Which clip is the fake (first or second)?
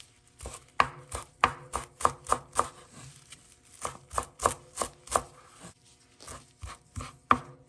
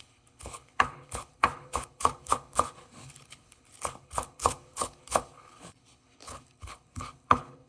second